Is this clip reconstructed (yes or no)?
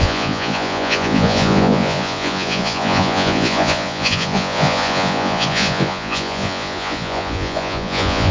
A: yes